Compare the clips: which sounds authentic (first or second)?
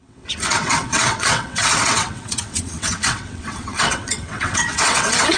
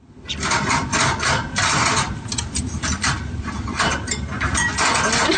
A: second